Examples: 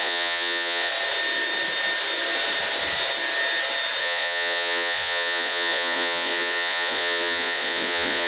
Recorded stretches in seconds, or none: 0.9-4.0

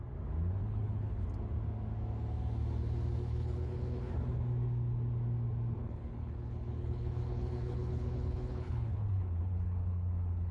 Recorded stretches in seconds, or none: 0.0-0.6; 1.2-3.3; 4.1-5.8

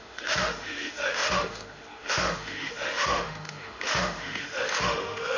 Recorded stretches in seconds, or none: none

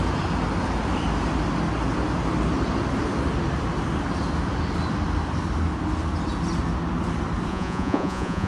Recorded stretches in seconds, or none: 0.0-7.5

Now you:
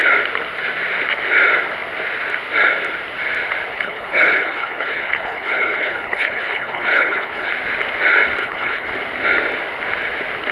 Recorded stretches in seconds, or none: 0.0-3.7; 7.5-8.4; 8.9-10.5

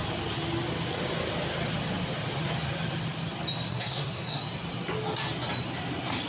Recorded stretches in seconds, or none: 0.0-3.7; 4.4-6.3